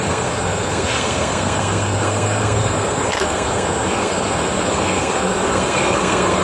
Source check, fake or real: fake